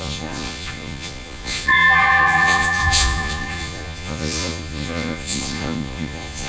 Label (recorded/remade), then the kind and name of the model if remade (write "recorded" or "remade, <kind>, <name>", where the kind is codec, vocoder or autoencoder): remade, vocoder, Vocos